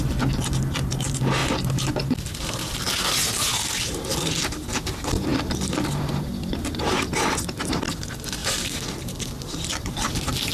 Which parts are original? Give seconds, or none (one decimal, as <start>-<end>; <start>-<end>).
0.0-5.3; 6.8-10.5